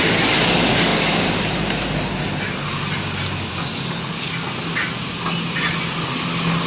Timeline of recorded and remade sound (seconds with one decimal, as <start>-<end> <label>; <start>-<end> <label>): 0.0-6.7 recorded